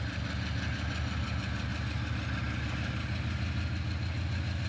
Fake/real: real